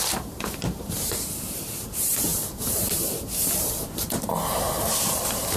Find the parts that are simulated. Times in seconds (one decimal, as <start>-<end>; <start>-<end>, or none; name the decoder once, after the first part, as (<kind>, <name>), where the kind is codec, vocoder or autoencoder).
0.0-5.6 (vocoder, BigVGAN v2)